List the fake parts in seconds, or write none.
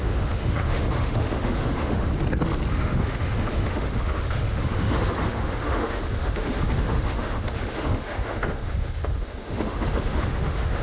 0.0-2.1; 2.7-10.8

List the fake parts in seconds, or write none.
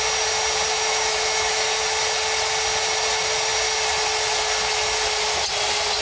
0.7-1.8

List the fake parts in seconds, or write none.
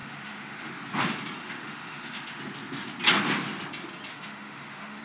0.0-0.7; 1.4-2.4; 4.1-5.0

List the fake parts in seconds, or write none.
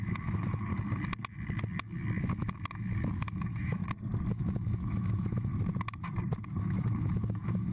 0.0-0.7; 2.2-3.8; 4.3-5.5; 6.6-7.7